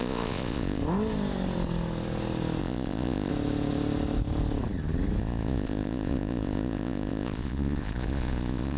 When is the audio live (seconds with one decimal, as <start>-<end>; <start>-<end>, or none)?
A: 0.8-2.6; 3.3-5.2